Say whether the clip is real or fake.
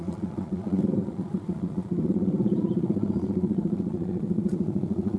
fake